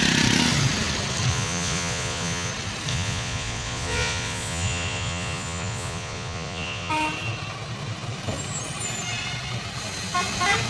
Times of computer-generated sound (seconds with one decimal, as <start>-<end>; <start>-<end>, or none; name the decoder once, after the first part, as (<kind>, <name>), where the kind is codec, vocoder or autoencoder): 1.3-2.5 (vocoder, Vocos); 2.9-6.9